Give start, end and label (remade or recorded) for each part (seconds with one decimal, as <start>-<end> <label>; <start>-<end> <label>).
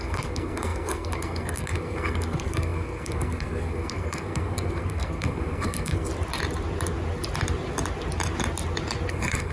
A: 0.0-6.1 remade; 6.1-9.1 recorded; 9.1-9.5 remade